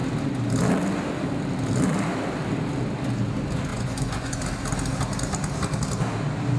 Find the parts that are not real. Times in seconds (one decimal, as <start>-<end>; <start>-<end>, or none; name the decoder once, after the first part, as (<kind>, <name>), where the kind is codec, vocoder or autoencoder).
3.7-4.4 (vocoder, Vocos)